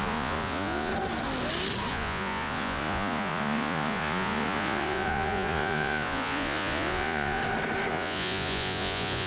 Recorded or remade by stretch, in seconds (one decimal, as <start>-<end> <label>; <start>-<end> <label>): 0.0-0.9 remade; 0.9-1.9 recorded; 1.9-7.4 remade; 7.4-7.9 recorded; 7.9-9.3 remade